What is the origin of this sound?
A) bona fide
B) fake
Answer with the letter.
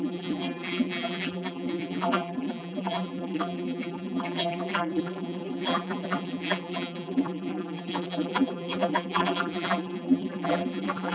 B